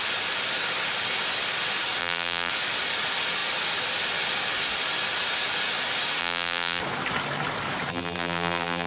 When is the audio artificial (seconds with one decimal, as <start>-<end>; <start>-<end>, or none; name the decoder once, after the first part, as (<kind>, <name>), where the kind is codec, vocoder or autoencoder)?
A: 2.0-2.5 (vocoder, BigVGAN v2); 6.2-6.8; 7.9-8.9